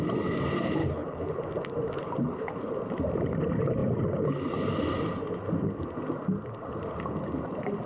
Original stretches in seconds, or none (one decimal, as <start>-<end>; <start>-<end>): 0.0-0.8; 1.4-2.2; 2.7-7.9